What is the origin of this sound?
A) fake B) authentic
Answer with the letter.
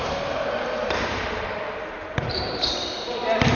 A